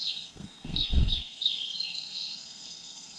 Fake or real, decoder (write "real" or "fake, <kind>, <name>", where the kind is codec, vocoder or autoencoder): fake, codec, SNAC